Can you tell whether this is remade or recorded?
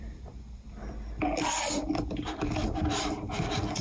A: recorded